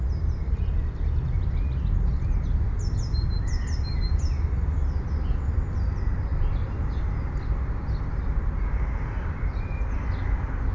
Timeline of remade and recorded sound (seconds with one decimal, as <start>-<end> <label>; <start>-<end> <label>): 0.0-10.7 recorded